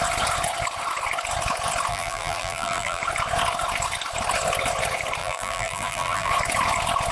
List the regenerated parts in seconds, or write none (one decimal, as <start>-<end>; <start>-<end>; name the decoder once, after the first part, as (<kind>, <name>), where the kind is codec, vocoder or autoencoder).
1.9-3.0 (vocoder, BigVGAN v2); 5.2-6.3